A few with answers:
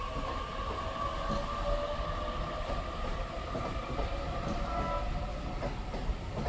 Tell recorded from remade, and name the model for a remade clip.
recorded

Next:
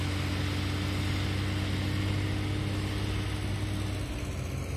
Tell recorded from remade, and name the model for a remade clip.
recorded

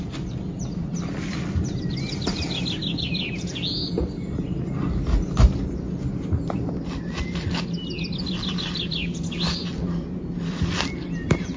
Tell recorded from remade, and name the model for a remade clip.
recorded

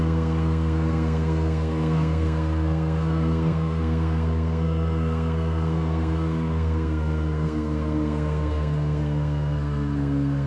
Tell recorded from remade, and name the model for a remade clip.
remade, codec, SNAC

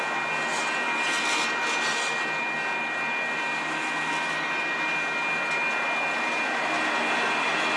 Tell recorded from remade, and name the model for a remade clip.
recorded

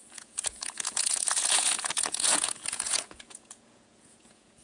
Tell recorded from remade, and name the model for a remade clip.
remade, vocoder, Vocos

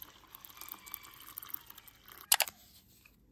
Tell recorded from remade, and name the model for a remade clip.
recorded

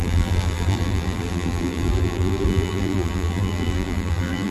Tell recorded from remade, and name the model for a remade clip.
remade, vocoder, BigVGAN v2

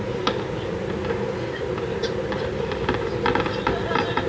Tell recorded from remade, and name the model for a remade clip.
recorded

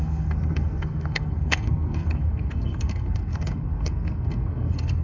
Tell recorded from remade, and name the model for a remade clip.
remade, codec, SNAC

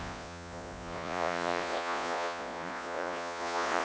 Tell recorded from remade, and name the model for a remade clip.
remade, vocoder, Vocos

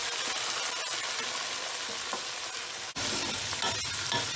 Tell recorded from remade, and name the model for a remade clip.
recorded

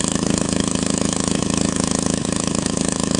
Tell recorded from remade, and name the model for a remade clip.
remade, autoencoder, DAC-VAE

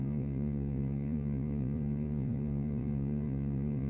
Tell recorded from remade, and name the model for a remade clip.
remade, vocoder, Vocos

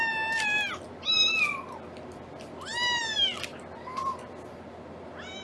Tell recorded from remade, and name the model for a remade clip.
recorded